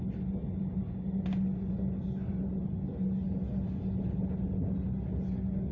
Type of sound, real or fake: real